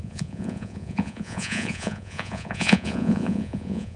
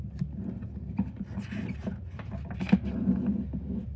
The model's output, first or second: first